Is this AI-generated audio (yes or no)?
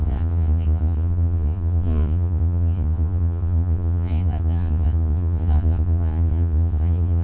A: yes